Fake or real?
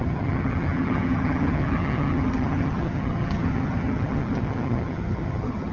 fake